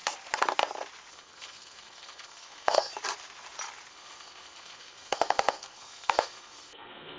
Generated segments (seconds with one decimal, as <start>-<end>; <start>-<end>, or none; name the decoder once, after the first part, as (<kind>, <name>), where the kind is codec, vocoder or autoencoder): 1.1-2.9 (codec, SNAC); 3.9-7.2